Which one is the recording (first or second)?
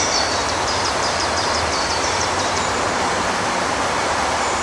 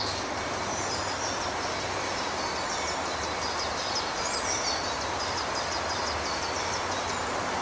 second